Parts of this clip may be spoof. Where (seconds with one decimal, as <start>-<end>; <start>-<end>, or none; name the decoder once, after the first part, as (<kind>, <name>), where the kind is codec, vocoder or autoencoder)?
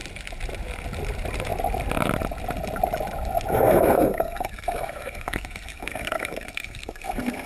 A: 3.5-7.5 (codec, SNAC)